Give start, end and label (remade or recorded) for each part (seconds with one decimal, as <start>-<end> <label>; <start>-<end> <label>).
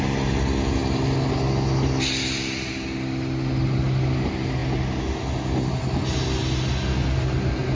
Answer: 0.0-7.7 recorded